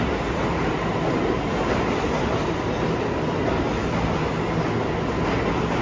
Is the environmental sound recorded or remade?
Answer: recorded